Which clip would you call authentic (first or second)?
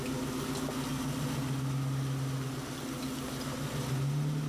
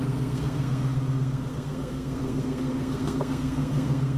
first